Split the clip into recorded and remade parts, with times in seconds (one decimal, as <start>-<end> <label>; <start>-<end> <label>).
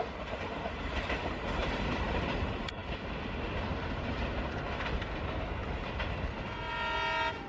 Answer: 0.0-1.6 recorded; 1.6-2.4 remade; 2.4-7.5 recorded